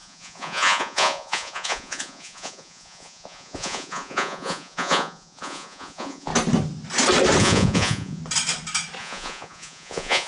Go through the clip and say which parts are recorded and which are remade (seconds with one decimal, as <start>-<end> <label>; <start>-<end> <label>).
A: 0.0-6.3 remade; 6.3-7.4 recorded; 7.4-8.2 remade; 8.2-9.0 recorded; 9.0-10.3 remade